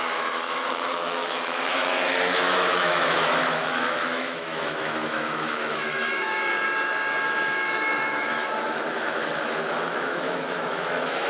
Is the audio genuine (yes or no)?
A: no